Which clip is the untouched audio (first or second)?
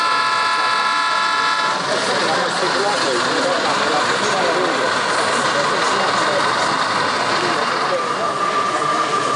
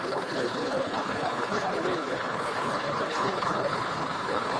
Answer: first